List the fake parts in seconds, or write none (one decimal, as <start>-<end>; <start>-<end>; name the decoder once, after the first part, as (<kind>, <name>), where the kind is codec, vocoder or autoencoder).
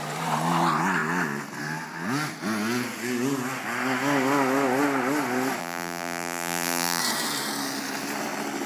5.6-7.0 (vocoder, BigVGAN v2)